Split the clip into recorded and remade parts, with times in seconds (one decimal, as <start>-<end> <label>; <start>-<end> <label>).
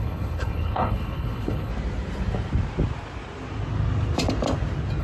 0.0-1.7 remade; 1.7-5.0 recorded